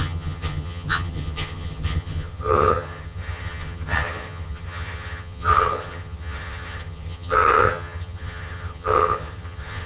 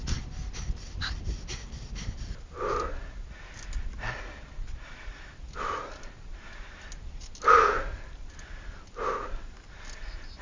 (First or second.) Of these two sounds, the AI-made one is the first